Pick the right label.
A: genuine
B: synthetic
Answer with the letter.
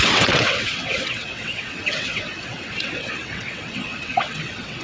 B